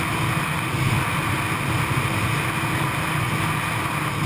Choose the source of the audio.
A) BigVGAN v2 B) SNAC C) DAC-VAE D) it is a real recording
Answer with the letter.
D